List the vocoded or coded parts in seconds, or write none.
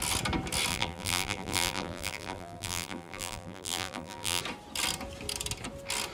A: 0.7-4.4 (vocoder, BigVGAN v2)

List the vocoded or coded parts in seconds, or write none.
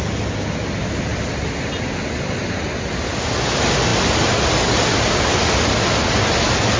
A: none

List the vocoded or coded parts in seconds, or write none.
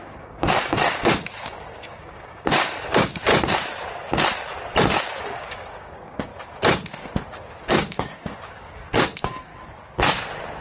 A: 0.0-3.3 (codec, DAC); 5.2-6.3; 7.6-9.5